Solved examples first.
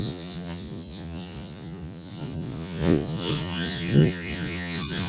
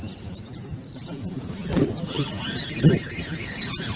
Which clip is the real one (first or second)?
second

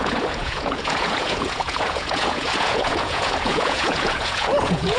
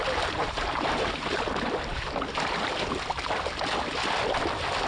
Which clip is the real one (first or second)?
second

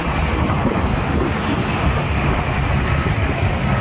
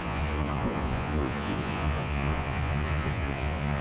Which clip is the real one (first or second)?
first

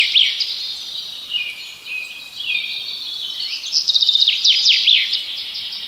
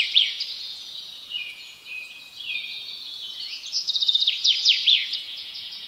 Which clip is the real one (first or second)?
first